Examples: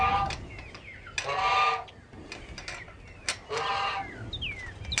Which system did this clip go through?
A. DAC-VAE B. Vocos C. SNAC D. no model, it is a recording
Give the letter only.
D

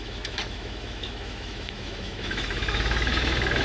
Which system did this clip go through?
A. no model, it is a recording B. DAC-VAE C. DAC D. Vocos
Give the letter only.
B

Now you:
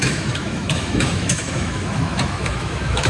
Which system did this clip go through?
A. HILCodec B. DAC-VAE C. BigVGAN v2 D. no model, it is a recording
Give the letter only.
B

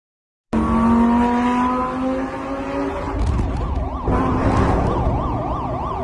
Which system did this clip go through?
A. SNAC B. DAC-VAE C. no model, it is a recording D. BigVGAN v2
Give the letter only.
C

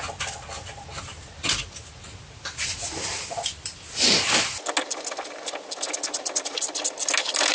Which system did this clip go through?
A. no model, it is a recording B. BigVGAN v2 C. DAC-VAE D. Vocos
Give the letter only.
A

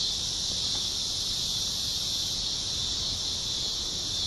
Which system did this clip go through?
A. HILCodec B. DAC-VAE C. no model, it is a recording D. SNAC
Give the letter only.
C